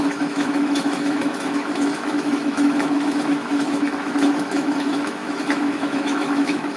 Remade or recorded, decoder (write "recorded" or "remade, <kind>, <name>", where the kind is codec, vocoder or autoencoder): remade, autoencoder, DAC-VAE